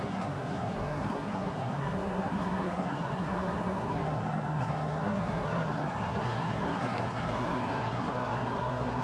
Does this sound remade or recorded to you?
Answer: remade